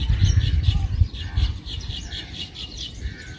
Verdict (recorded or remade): recorded